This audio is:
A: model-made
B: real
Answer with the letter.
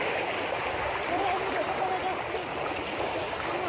B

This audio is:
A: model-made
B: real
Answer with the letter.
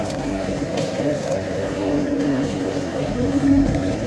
A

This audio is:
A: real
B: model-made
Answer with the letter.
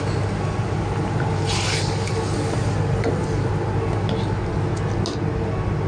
A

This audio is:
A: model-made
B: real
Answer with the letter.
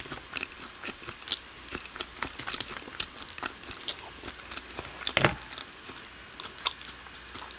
B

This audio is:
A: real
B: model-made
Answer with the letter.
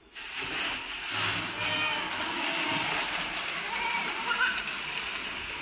A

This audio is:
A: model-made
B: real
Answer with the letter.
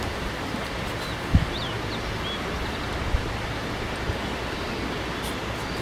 B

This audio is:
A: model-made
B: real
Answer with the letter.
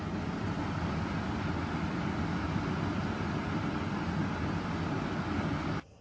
B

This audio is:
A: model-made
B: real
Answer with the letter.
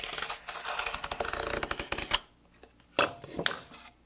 B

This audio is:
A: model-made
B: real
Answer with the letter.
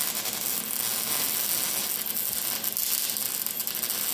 B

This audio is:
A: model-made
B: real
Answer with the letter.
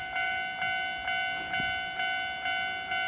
B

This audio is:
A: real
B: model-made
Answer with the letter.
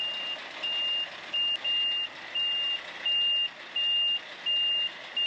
A